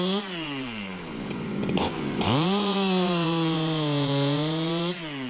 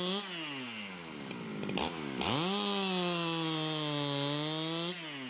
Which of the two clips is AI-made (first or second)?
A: first